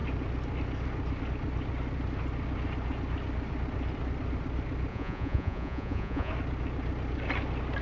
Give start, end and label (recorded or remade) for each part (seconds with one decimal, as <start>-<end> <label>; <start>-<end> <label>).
0.0-4.9 recorded; 4.9-6.3 remade; 6.3-7.8 recorded